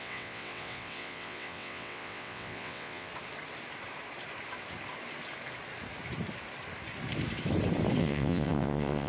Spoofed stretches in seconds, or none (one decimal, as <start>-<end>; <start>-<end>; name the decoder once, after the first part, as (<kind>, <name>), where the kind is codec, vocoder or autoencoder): 0.0-3.1 (vocoder, WaveNeXt); 8.0-9.1